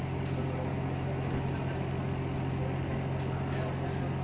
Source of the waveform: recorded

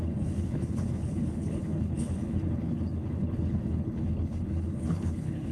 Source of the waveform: remade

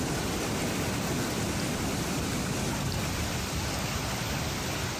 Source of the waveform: recorded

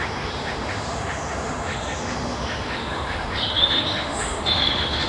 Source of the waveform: remade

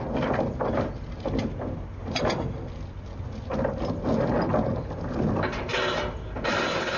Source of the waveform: recorded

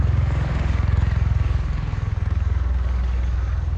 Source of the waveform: remade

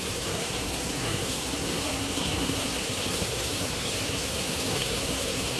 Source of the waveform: remade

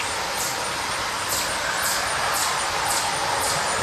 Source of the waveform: recorded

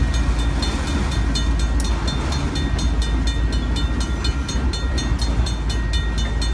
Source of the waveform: recorded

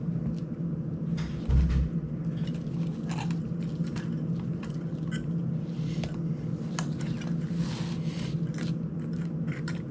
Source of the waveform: recorded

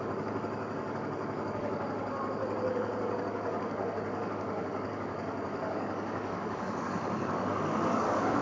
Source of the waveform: remade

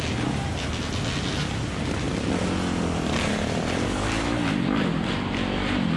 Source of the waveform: recorded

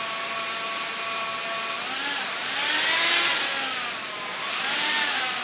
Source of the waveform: recorded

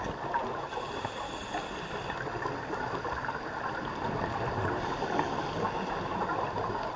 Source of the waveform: recorded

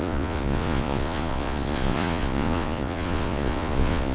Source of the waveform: remade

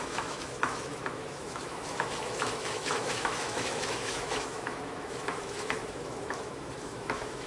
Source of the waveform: remade